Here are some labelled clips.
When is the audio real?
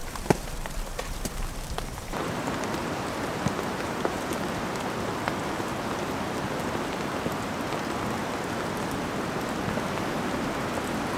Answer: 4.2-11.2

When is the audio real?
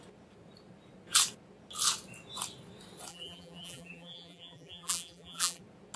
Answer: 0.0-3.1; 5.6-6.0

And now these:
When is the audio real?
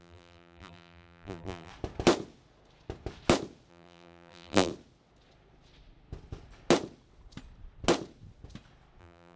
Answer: 1.7-3.7; 4.7-9.0